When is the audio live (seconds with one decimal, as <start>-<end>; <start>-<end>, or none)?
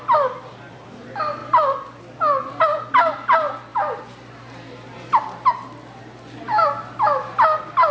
0.0-3.7; 5.1-7.9